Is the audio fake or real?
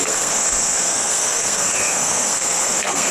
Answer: fake